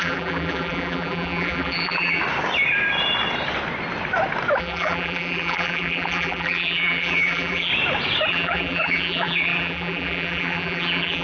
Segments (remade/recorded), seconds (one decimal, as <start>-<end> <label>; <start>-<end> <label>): 0.0-2.2 remade; 2.2-4.6 recorded; 4.6-7.7 remade; 7.7-8.3 recorded; 8.3-11.2 remade